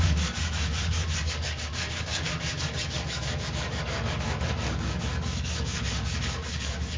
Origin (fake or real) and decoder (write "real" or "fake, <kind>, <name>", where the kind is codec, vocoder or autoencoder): fake, codec, DAC